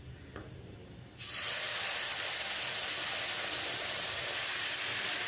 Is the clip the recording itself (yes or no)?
yes